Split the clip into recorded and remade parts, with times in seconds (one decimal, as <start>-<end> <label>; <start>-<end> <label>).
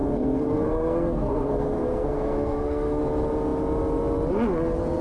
0.0-3.0 remade; 3.0-5.0 recorded